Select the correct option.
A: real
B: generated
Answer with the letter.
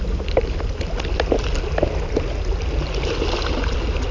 A